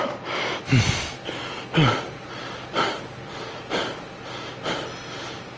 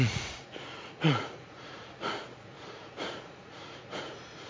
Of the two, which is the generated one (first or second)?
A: second